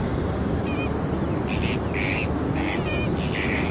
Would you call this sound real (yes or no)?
yes